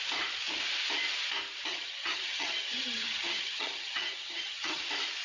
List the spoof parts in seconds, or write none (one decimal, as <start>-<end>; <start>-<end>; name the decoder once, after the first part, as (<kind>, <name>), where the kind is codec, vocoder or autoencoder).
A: 1.7-4.8 (vocoder, HiFi-GAN)